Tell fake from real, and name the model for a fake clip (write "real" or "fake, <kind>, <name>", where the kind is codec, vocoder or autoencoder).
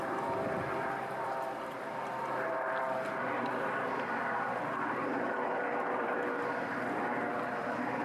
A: fake, vocoder, BigVGAN v2